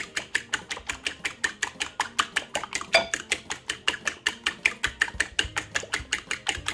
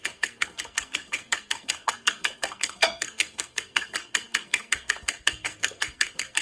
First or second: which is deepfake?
second